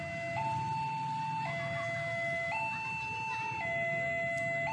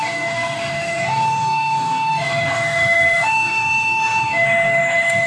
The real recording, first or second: first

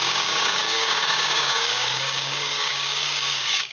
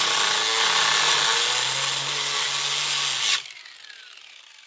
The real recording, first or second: second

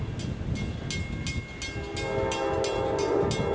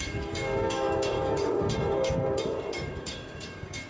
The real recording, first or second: first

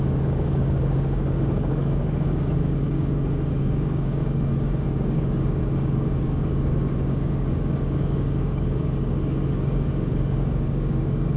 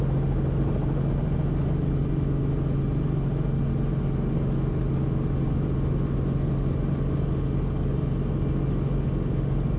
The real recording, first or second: second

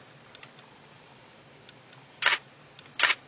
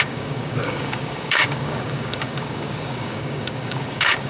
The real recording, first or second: first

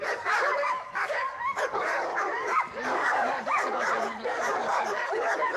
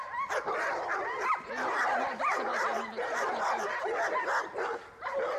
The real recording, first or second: second